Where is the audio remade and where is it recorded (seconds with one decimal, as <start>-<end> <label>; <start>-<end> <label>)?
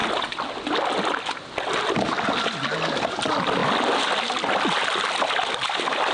0.0-6.1 recorded